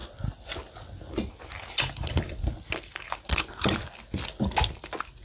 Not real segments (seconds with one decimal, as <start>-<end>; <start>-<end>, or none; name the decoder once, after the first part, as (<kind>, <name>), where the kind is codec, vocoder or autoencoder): none